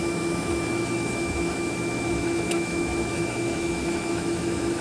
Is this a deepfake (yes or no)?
yes